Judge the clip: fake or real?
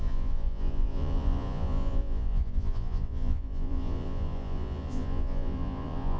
fake